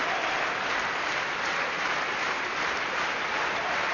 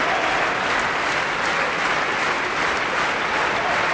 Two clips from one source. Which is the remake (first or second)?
first